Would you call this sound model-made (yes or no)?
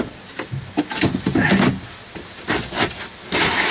no